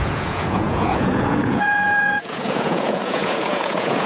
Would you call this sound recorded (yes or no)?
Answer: no